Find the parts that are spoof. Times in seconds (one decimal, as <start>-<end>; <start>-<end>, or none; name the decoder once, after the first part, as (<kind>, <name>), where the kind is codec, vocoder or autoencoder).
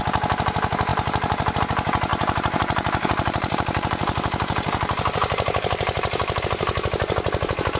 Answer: 0.9-1.6 (vocoder, BigVGAN v2); 2.1-6.4